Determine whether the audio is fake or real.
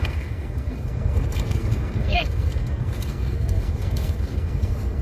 fake